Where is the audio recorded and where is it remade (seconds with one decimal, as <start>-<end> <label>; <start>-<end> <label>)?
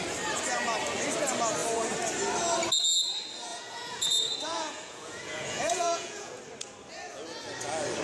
0.0-3.5 recorded; 3.5-6.4 remade; 6.4-8.0 recorded